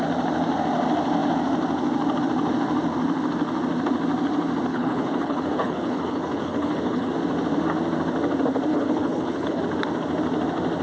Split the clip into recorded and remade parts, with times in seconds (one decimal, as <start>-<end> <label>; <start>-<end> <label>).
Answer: 0.0-4.7 recorded; 4.7-7.1 remade; 7.1-8.7 recorded; 8.7-9.6 remade; 9.6-10.8 recorded